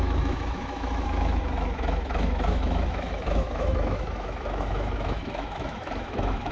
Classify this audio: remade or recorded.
remade